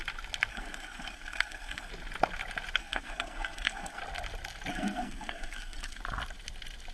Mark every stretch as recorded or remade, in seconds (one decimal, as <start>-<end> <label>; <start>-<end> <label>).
0.0-0.5 recorded; 0.5-1.9 remade; 1.9-2.8 recorded; 2.8-4.0 remade; 4.0-4.7 recorded; 4.7-6.0 remade; 6.0-6.9 recorded

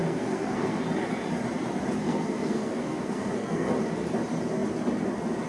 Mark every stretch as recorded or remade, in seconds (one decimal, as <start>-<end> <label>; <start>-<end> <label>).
0.0-0.8 remade; 0.8-2.0 recorded; 2.0-3.7 remade; 3.7-5.5 recorded

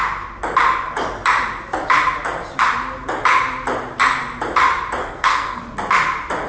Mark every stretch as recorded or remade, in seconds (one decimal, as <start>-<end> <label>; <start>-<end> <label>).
0.0-5.0 recorded; 5.0-5.6 remade; 5.6-6.5 recorded